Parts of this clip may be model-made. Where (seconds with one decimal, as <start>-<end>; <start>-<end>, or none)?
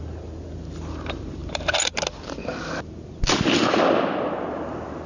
0.0-1.4; 4.5-5.1